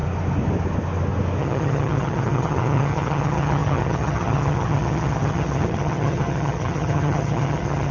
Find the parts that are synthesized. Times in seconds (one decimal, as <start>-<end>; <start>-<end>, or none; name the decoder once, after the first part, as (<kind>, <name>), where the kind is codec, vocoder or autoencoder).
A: 1.4-7.9 (vocoder, HiFi-GAN)